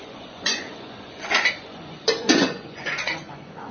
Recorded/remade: remade